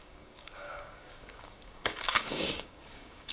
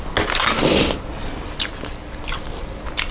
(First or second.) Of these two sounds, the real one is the second